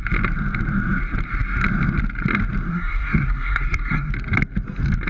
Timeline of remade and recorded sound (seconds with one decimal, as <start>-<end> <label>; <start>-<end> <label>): 0.0-2.7 recorded; 2.7-4.1 remade; 4.1-5.1 recorded

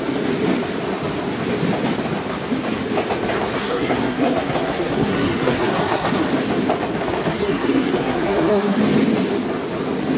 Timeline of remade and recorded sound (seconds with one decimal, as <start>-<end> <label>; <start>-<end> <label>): 0.0-3.6 recorded; 3.6-6.1 remade; 6.1-7.3 recorded; 7.3-8.8 remade; 8.8-10.2 recorded